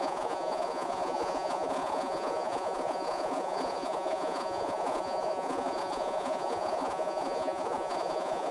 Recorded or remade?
remade